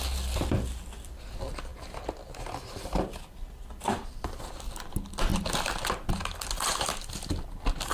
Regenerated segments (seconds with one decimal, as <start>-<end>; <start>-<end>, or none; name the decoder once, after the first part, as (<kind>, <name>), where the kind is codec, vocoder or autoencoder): none